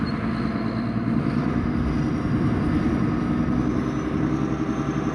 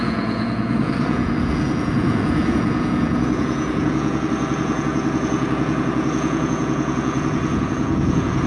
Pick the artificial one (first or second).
second